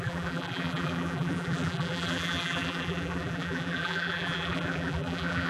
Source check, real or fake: fake